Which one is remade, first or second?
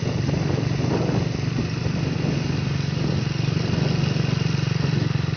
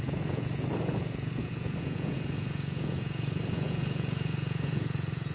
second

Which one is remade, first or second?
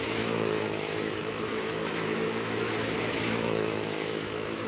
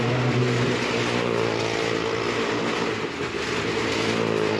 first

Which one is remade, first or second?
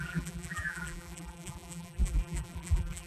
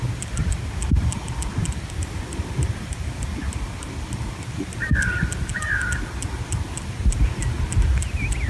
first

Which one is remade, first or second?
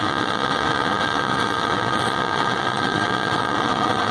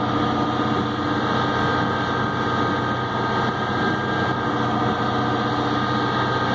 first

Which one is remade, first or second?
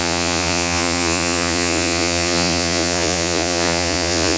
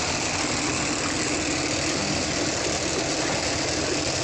first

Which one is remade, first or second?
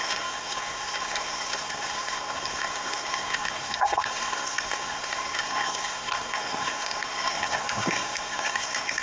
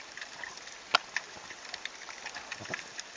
first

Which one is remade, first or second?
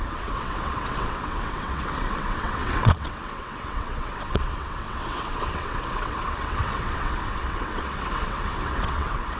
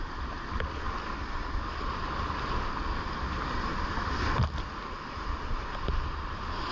first